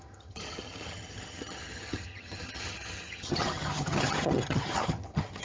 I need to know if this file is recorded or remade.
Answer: remade